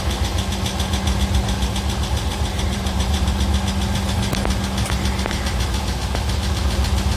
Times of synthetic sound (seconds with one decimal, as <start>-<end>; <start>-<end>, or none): 2.3-3.3